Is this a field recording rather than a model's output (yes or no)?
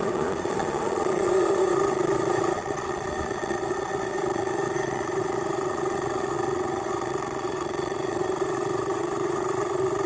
no